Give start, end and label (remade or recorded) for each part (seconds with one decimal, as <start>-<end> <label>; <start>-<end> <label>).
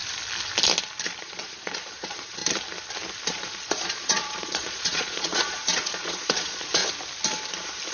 0.0-1.2 recorded; 1.2-2.4 remade; 2.4-3.3 recorded; 3.3-6.8 remade; 6.8-7.9 recorded